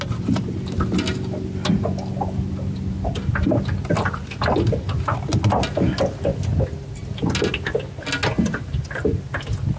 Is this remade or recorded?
recorded